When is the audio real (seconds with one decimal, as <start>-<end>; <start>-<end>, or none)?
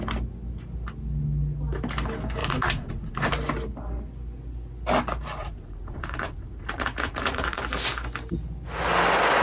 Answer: 0.0-2.4; 3.3-5.4; 7.6-9.4